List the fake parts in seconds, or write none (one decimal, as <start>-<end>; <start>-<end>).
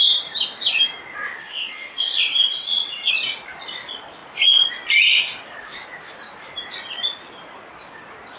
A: 1.4-3.1